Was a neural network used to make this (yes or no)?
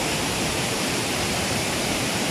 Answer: yes